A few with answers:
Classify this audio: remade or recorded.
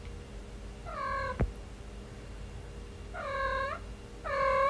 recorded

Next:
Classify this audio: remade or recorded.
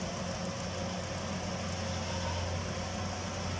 recorded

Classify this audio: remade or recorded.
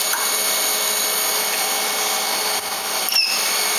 recorded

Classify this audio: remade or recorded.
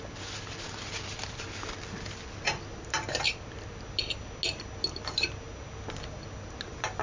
recorded